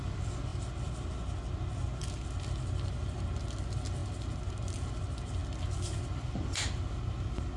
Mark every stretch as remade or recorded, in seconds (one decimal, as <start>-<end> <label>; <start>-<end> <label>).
0.0-7.6 recorded